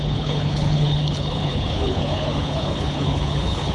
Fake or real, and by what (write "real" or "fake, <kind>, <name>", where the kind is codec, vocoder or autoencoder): fake, codec, HILCodec